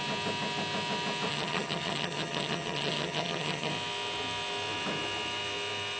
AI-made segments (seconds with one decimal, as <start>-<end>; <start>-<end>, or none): 1.3-3.7